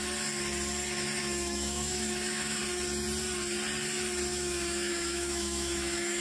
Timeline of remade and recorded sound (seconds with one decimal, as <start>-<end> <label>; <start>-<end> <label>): 0.0-1.2 recorded; 1.2-2.6 remade; 2.6-4.3 recorded; 4.3-6.2 remade